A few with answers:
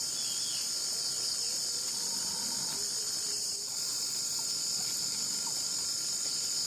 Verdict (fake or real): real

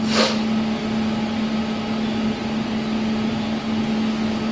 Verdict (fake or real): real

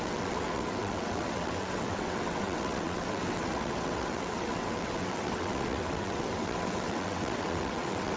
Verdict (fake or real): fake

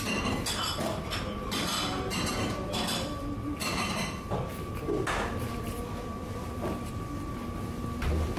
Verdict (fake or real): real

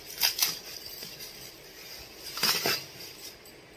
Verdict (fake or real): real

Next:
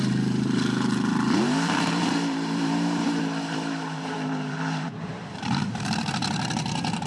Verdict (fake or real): fake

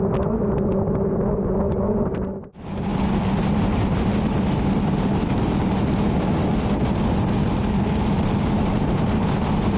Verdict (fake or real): real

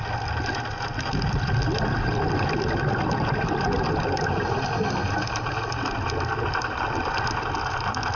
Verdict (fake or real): real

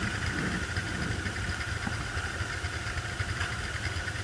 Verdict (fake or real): real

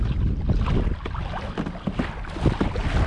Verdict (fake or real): real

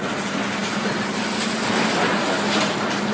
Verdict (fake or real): real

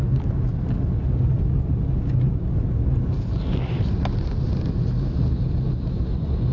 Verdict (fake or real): real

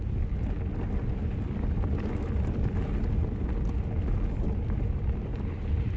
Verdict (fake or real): real